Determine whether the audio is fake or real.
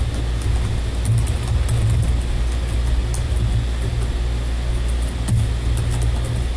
real